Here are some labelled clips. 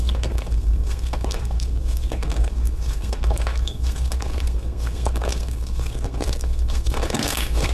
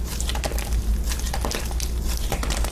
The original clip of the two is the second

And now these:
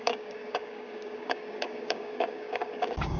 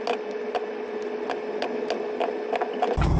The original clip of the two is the second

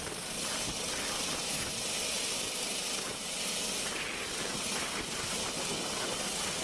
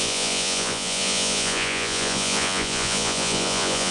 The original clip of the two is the first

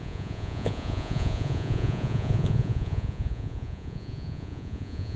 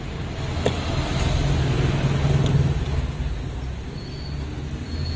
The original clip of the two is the second